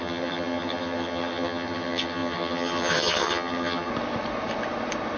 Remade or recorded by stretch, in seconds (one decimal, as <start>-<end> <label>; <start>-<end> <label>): 0.0-3.9 remade; 3.9-5.2 recorded

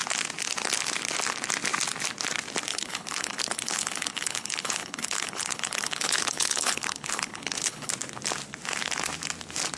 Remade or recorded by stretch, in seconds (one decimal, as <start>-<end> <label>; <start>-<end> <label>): 0.0-2.7 recorded; 2.7-7.9 remade; 7.9-9.8 recorded

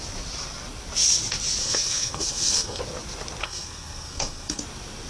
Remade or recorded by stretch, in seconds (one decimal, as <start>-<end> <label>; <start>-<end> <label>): 0.0-1.6 recorded; 1.6-2.8 remade; 2.8-3.4 recorded; 3.4-4.6 remade; 4.6-5.1 recorded